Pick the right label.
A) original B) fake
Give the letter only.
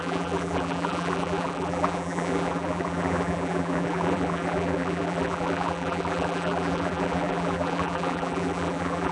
B